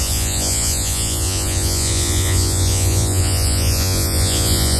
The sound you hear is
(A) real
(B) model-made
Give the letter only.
B